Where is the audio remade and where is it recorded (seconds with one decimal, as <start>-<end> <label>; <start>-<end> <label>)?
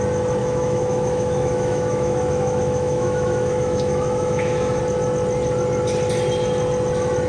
0.0-0.4 recorded; 0.4-4.8 remade; 4.8-7.3 recorded